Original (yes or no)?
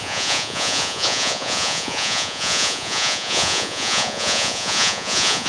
no